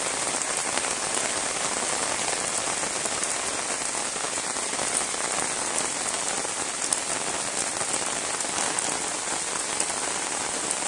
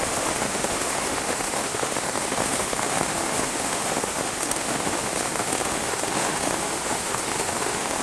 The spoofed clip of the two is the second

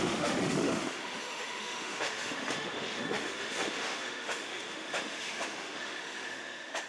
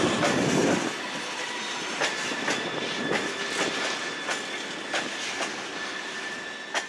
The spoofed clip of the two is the first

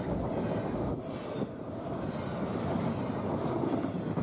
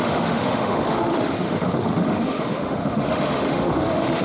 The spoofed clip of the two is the second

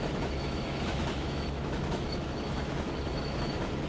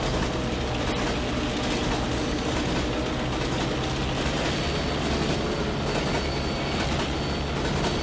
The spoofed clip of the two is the first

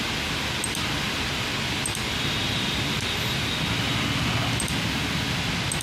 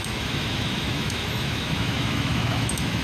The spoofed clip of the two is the second